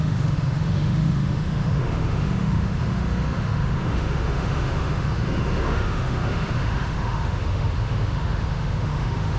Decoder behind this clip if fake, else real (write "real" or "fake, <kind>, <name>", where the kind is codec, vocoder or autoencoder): fake, autoencoder, DAC-VAE